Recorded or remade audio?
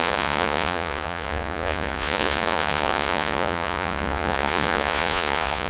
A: remade